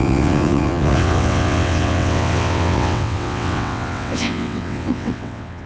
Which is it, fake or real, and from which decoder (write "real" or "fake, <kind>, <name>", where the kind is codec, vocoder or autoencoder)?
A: fake, vocoder, WaveNeXt